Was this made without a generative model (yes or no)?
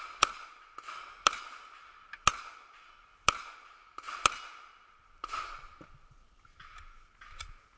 yes